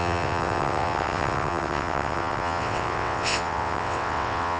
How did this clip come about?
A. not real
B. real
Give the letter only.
A